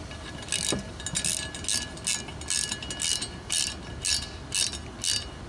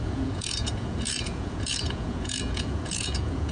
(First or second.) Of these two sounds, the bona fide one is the first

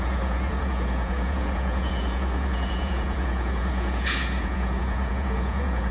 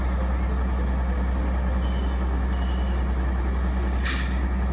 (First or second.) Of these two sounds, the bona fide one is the second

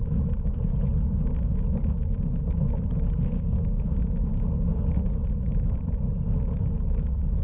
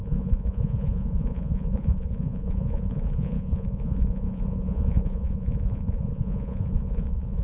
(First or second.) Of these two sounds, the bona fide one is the first